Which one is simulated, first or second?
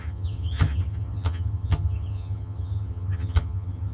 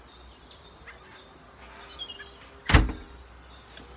first